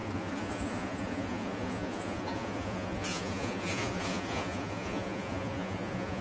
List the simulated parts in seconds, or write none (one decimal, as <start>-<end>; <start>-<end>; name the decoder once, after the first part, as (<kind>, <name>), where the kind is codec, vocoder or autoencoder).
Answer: 0.0-6.2 (vocoder, Vocos)